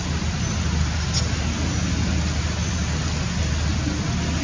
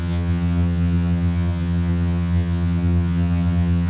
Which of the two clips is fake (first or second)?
second